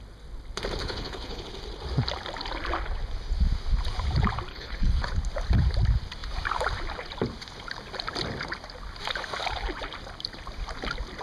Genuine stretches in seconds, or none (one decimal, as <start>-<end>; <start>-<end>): 0.0-0.8; 1.4-4.5; 5.1-11.2